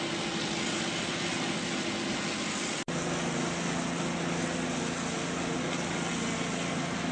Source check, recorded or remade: recorded